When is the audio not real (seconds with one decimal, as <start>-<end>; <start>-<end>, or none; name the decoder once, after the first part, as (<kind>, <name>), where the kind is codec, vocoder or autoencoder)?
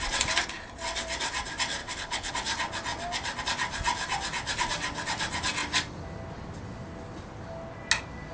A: 1.8-2.3 (codec, HILCodec)